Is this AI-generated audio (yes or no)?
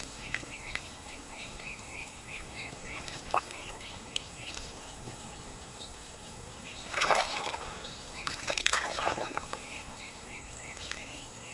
yes